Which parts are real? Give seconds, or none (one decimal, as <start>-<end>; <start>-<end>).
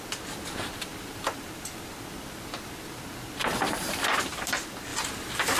0.0-5.6